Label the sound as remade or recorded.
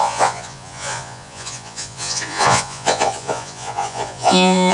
remade